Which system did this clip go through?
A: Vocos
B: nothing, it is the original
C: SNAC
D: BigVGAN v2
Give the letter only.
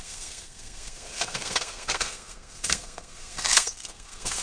C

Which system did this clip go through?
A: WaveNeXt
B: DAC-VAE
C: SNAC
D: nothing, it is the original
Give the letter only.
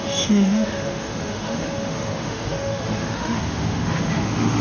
B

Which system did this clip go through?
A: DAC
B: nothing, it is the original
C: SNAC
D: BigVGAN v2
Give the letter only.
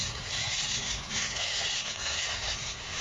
C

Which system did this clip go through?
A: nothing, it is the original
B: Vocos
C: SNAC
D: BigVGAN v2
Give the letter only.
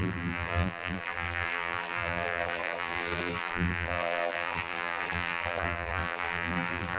D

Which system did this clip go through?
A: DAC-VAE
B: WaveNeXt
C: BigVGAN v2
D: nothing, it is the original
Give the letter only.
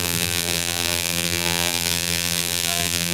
C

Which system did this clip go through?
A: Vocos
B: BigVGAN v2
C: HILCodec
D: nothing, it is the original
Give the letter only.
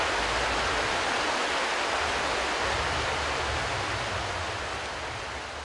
D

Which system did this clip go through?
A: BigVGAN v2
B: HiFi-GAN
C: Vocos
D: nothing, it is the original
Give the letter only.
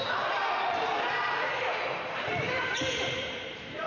A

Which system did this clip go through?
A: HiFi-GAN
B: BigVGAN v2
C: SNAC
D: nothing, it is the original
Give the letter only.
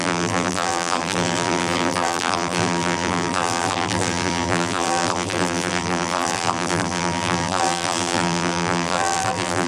B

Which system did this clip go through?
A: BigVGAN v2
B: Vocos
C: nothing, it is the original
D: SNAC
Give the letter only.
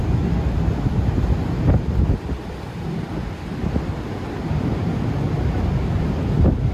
C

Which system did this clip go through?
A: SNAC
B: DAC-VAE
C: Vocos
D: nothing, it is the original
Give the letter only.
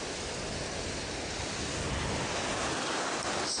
D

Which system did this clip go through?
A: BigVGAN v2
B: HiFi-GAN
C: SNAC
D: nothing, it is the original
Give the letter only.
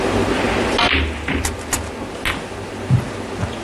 D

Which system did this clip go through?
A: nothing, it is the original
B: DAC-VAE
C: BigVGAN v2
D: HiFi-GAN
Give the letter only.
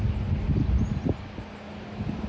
A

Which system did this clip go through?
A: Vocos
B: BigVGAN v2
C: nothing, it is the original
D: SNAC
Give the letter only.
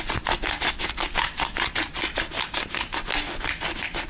C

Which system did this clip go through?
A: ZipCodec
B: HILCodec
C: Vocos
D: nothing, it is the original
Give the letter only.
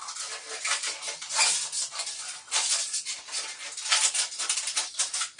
D